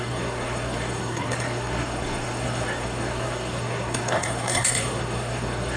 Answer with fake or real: fake